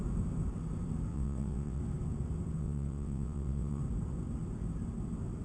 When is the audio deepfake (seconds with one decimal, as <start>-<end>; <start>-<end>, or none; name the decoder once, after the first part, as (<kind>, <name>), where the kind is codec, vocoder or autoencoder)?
1.1-1.8 (vocoder, WaveNeXt); 2.6-3.8